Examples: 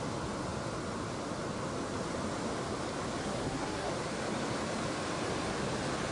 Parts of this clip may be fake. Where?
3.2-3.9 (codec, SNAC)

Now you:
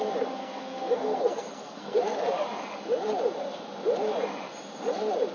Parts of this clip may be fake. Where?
0.4-2.0 (codec, SNAC)

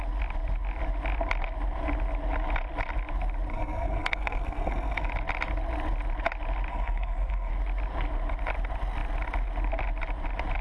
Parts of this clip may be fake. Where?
3.5-5.1 (codec, SNAC); 6.7-7.5

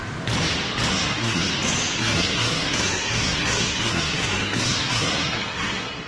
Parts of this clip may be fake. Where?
0.9-1.5 (codec, SNAC); 2.0-6.1